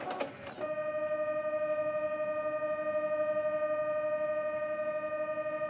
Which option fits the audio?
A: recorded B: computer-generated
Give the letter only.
A